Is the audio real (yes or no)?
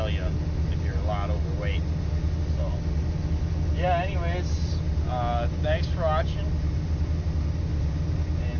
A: yes